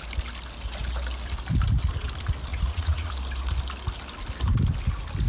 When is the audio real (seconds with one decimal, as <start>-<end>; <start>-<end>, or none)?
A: 0.0-2.5; 3.1-5.3